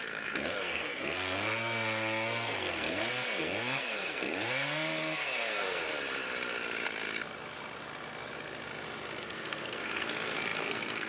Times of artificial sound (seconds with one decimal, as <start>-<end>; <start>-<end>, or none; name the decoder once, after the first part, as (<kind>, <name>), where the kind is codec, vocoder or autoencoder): 0.0-5.9 (codec, SNAC); 9.2-11.1